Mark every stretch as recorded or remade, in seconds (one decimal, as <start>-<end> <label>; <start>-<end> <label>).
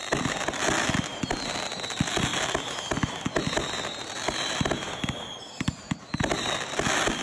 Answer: 0.0-7.2 recorded